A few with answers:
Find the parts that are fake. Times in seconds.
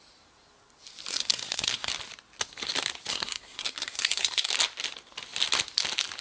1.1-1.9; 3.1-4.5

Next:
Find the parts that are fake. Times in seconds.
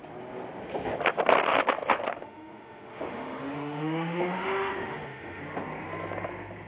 1.5-5.4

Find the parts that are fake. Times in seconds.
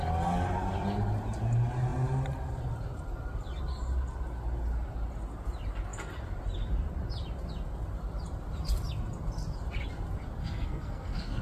10.4-11.4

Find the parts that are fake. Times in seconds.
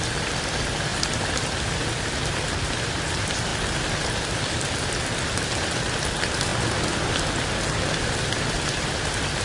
0.0-0.9; 1.9-3.5; 5.7-6.5; 7.8-9.4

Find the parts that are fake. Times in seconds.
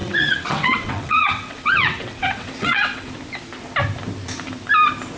0.0-3.1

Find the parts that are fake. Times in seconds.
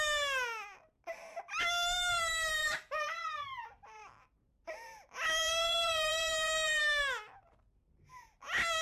2.6-6.8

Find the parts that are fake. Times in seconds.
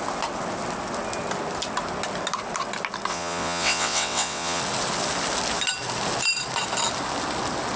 3.1-4.6